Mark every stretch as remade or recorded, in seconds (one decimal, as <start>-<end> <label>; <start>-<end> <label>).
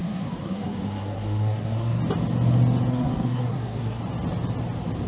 0.0-2.0 remade; 2.0-2.9 recorded; 2.9-4.0 remade; 4.0-5.1 recorded